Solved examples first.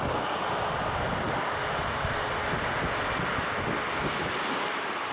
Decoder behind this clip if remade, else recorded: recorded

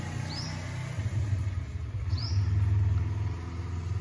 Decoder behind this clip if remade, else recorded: recorded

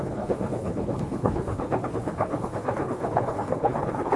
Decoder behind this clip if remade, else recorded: remade, codec, HILCodec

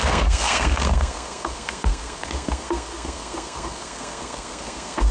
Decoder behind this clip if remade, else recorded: remade, codec, SNAC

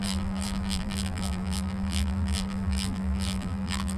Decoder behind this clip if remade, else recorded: remade, vocoder, BigVGAN v2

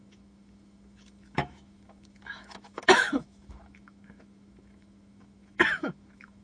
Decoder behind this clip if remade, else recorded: remade, autoencoder, DAC-VAE